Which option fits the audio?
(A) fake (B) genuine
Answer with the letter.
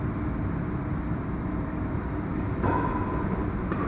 B